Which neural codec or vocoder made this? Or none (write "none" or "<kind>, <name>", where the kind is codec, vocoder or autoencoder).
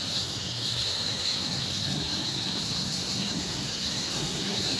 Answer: codec, SNAC